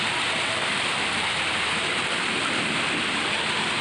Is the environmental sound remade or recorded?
remade